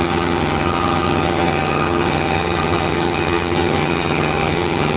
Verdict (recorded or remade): remade